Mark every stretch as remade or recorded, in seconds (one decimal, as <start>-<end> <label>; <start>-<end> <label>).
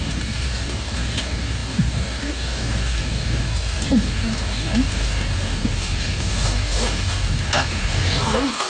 0.0-8.7 remade